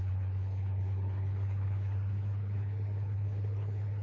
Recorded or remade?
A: remade